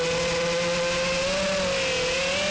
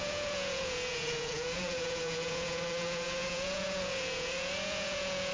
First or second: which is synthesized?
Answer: second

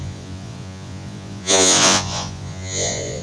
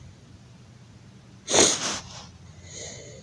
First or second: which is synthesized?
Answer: first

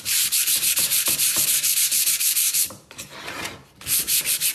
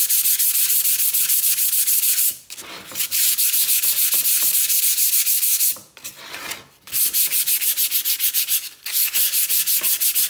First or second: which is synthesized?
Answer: first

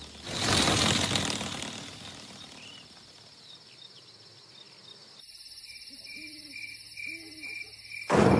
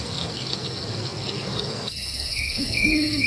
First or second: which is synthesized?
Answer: second